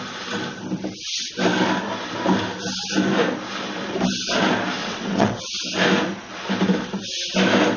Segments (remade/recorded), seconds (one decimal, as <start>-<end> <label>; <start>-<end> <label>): 0.0-4.8 recorded; 4.8-5.4 remade; 5.4-7.8 recorded